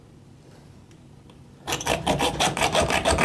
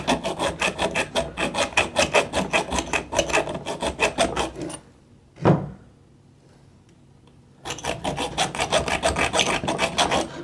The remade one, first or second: first